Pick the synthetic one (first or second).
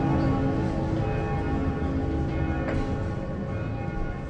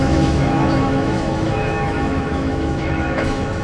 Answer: second